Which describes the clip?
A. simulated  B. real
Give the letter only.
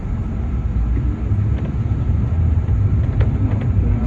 B